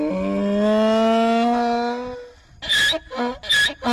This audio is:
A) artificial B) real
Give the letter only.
B